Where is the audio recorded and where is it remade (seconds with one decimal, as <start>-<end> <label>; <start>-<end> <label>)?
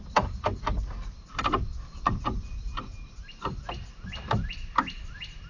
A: 0.0-5.5 recorded